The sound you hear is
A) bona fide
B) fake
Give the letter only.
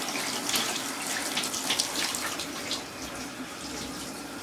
A